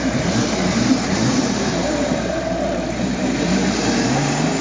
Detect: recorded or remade remade